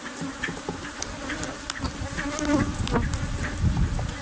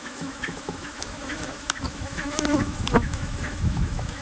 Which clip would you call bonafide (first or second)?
first